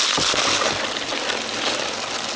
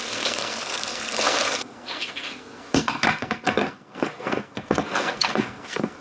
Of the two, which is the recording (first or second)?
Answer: first